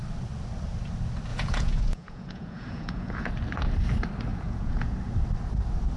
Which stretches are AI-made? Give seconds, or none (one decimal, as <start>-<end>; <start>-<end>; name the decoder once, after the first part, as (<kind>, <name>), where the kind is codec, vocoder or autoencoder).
1.3-3.3 (vocoder, Vocos); 4.3-5.1